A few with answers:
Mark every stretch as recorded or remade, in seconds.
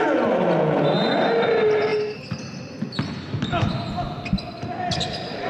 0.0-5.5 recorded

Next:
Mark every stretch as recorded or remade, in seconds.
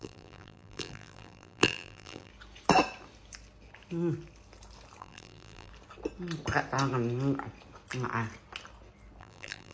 0.0-2.3 remade; 2.3-5.0 recorded; 5.0-5.7 remade; 5.7-9.2 recorded; 9.2-9.7 remade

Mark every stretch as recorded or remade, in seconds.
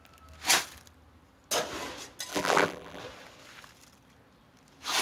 0.0-2.3 recorded; 2.3-3.0 remade; 3.0-5.0 recorded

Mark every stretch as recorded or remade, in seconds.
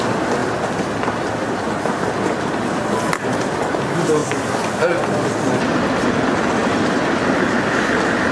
0.0-8.3 recorded